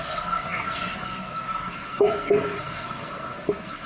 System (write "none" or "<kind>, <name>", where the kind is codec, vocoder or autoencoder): codec, SNAC